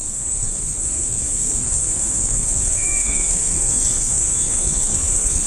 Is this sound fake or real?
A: fake